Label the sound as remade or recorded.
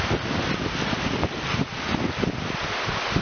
recorded